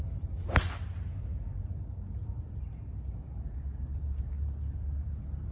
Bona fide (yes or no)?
yes